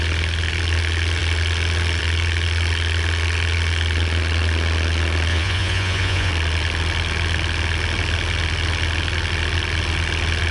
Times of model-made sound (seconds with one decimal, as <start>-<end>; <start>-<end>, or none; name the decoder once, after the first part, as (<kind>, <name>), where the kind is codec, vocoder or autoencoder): 5.3-6.3 (vocoder, Vocos)